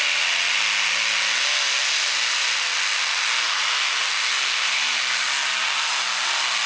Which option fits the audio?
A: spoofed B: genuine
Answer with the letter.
B